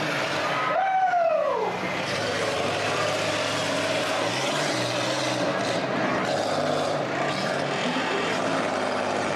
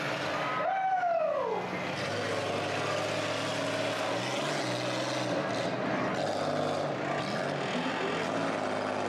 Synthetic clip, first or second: first